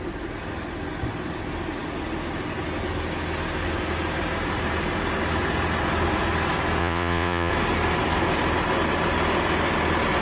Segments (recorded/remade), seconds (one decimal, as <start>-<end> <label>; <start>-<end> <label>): 0.0-6.8 recorded; 6.8-7.5 remade; 7.5-10.2 recorded